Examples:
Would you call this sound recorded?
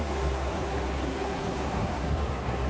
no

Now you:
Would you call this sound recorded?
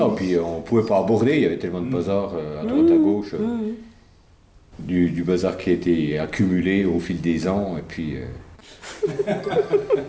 yes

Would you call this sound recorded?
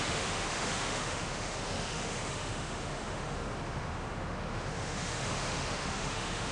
no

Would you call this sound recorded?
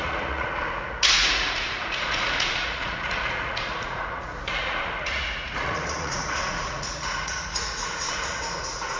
no